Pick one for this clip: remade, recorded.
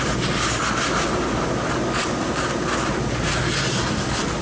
recorded